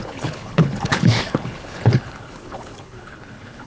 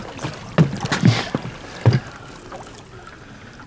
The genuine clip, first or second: second